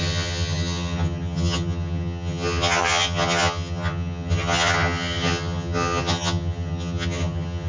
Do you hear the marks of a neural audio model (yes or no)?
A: yes